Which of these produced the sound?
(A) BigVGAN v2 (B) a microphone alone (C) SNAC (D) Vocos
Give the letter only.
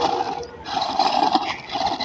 B